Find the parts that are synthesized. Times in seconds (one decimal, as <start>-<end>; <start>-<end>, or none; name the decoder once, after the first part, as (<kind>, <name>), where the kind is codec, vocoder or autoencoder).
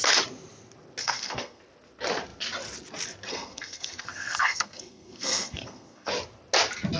1.0-1.6 (codec, SNAC); 3.3-6.1